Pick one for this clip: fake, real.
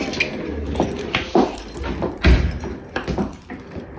real